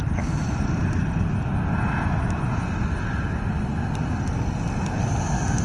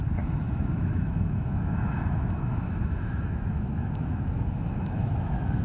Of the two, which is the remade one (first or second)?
second